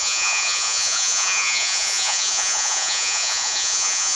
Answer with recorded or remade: remade